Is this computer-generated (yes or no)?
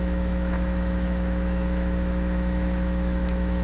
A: yes